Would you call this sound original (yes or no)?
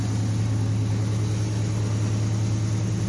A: yes